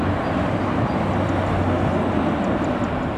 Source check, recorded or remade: recorded